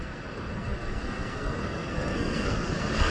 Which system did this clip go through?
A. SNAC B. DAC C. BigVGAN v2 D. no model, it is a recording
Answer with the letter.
A